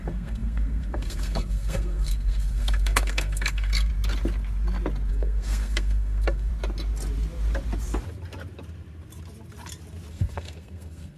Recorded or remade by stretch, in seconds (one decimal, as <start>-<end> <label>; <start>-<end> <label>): 0.0-3.9 remade; 3.9-5.1 recorded; 5.1-6.5 remade; 6.5-10.1 recorded; 10.1-11.2 remade